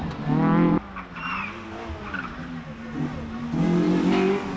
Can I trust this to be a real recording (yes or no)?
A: yes